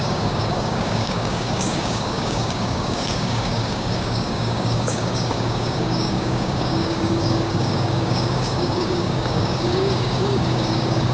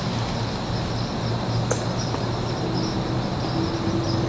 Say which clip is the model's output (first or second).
first